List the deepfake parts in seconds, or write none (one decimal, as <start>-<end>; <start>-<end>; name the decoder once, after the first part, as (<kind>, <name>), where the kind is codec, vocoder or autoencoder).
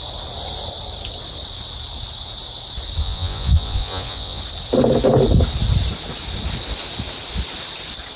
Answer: 3.0-4.4 (vocoder, Vocos)